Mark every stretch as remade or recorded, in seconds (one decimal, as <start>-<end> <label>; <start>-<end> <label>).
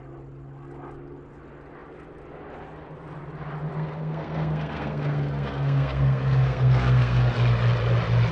0.0-3.7 recorded; 3.7-7.3 remade; 7.3-8.3 recorded